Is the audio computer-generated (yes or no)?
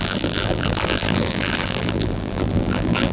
yes